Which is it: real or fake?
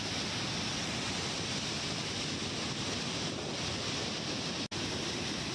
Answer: real